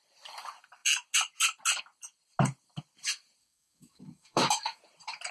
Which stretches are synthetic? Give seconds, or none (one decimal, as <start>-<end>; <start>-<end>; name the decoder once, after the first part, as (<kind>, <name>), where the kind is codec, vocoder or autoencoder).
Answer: 3.4-4.8 (codec, DAC)

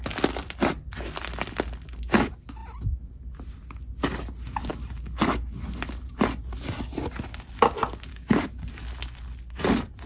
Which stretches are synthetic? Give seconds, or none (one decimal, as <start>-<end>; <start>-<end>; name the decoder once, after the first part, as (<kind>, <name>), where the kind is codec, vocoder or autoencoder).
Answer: 8.1-8.7 (codec, DAC)

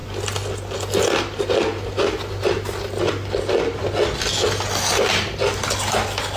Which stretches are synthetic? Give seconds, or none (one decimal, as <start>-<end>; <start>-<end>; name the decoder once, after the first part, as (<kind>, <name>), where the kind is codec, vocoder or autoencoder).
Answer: none

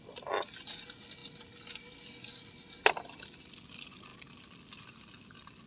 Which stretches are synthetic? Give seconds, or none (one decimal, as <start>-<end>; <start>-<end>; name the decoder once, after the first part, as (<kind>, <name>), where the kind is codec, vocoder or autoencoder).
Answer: none

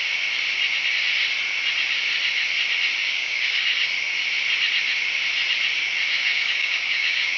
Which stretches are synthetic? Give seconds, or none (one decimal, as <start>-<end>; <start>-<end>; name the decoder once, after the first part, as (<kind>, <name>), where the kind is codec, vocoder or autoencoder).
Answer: 3.0-3.9 (codec, DAC); 6.2-7.4

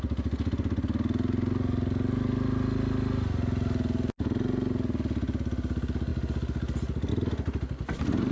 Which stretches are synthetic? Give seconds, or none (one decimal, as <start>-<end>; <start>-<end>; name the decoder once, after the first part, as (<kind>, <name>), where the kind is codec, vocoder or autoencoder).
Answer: none

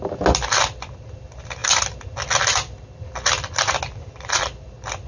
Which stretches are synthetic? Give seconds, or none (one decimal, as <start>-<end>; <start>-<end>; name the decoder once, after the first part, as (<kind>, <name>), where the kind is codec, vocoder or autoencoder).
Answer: none